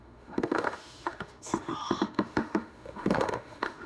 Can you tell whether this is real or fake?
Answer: fake